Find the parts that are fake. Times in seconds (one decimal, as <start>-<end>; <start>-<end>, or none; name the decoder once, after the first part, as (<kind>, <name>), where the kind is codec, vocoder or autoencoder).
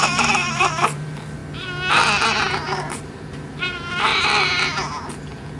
0.0-1.4 (vocoder, BigVGAN v2); 3.1-4.1